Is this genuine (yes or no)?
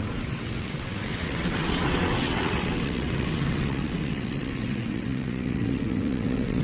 no